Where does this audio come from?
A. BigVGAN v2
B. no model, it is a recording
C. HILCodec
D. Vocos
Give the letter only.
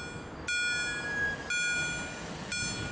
B